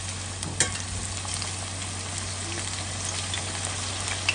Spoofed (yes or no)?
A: no